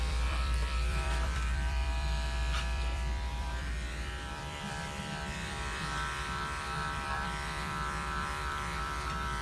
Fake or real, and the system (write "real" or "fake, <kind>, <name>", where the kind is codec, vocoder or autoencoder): fake, vocoder, BigVGAN v2